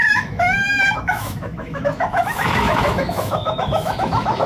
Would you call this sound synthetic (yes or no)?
yes